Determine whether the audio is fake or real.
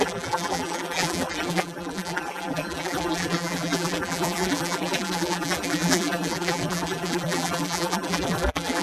fake